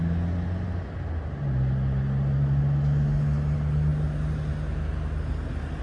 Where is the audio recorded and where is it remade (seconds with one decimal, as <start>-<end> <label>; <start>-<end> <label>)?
0.0-5.8 recorded